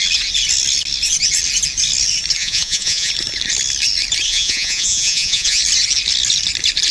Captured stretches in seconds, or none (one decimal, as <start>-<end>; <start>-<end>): 0.0-2.4; 3.1-4.3; 5.6-6.9